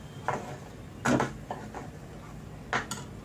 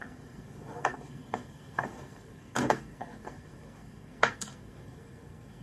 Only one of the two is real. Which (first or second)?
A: first